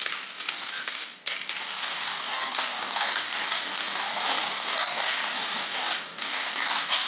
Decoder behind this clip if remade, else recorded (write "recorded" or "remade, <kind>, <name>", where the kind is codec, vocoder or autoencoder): remade, codec, DAC